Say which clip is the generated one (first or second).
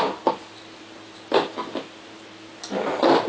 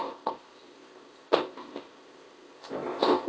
second